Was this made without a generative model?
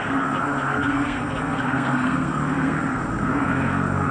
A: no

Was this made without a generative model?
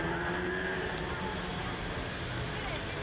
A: yes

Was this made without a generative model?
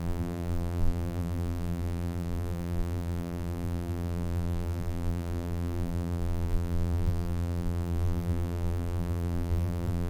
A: no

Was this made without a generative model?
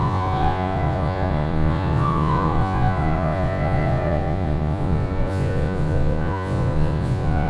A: no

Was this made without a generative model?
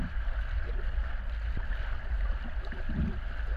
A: yes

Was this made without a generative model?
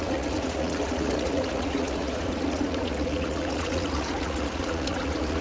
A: no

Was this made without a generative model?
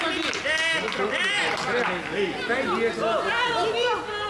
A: yes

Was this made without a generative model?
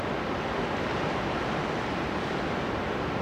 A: yes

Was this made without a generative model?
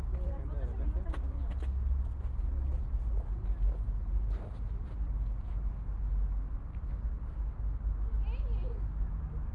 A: yes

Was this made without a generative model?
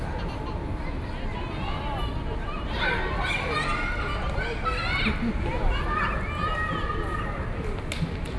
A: yes